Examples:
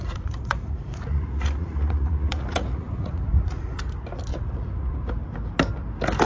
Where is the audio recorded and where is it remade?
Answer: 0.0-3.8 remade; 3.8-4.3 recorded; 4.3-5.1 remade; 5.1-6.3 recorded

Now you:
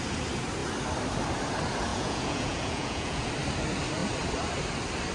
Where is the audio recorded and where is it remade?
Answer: 0.0-1.9 recorded; 1.9-3.3 remade; 3.3-5.1 recorded

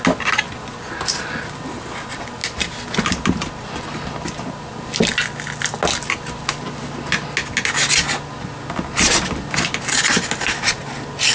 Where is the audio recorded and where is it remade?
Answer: 0.0-11.3 recorded

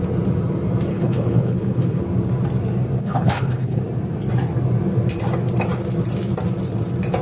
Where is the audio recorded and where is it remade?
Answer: 0.0-0.9 recorded; 0.9-2.0 remade; 2.0-3.0 recorded; 3.0-3.8 remade; 3.8-7.2 recorded

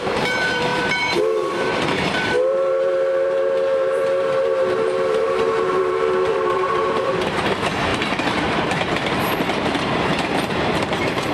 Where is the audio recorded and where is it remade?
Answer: 0.0-11.3 remade

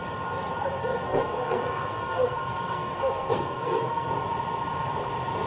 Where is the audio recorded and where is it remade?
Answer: 0.0-0.8 recorded; 0.8-4.1 remade; 4.1-5.5 recorded

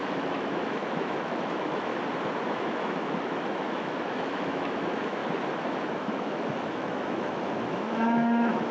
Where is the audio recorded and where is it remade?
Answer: 0.0-1.9 remade; 1.9-2.5 recorded; 2.5-5.2 remade; 5.2-5.8 recorded; 5.8-8.7 remade